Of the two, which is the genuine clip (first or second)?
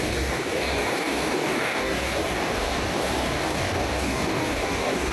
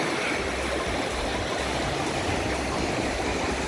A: second